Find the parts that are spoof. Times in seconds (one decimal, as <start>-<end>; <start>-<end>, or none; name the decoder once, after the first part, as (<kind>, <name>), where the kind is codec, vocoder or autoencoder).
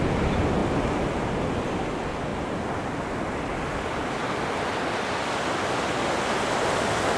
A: none